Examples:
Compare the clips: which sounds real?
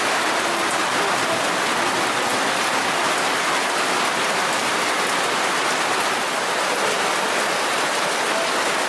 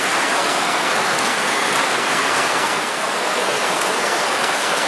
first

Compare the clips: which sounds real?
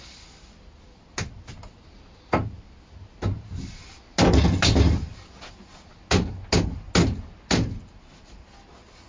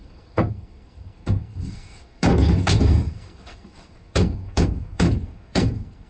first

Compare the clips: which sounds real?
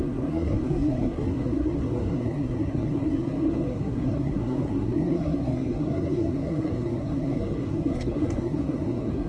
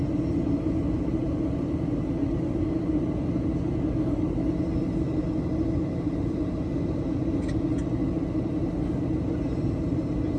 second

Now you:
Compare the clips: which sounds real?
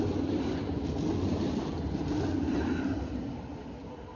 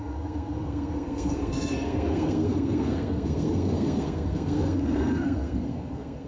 first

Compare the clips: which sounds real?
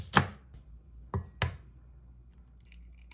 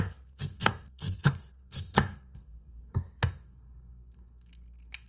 first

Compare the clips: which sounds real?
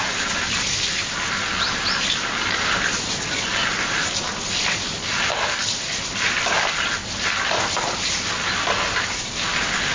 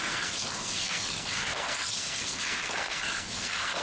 first